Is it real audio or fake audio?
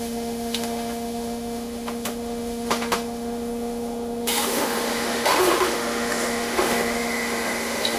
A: fake